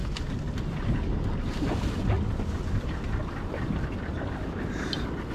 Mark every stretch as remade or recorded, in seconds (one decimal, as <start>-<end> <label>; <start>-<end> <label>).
0.0-2.4 recorded; 2.4-5.3 remade